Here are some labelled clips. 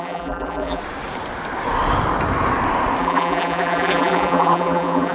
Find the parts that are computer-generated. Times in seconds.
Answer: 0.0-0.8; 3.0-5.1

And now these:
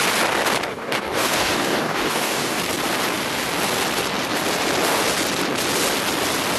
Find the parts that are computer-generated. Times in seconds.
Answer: 0.7-2.6

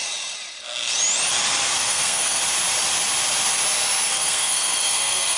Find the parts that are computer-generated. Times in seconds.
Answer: 1.8-2.4; 4.1-5.4

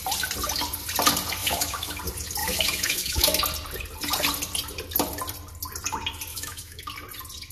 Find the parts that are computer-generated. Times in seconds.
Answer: 1.4-2.0; 2.4-3.4; 6.3-6.8

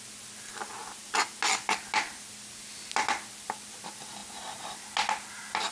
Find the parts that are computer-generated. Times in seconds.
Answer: none

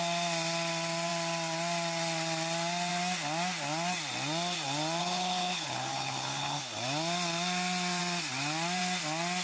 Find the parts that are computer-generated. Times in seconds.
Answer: 5.0-6.6